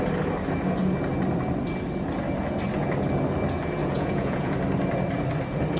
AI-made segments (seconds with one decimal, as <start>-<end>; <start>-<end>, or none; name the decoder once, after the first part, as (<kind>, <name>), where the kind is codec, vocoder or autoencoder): 3.8-4.5 (vocoder, Vocos)